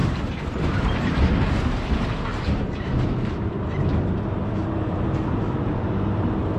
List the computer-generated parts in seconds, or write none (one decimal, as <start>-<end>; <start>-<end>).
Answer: 0.0-1.6; 2.3-6.6